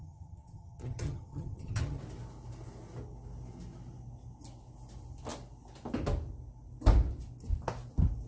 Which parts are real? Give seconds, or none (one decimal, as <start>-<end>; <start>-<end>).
2.0-8.3